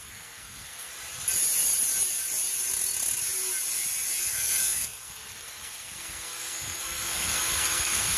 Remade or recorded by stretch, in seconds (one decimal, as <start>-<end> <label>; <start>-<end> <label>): 0.0-0.9 remade; 0.9-4.2 recorded; 4.2-8.2 remade